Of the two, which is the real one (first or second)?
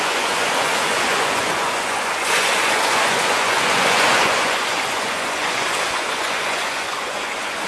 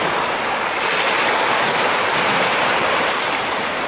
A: second